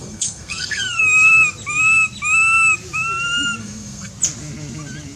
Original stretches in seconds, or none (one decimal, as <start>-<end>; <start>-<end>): 1.0-3.6; 4.1-5.2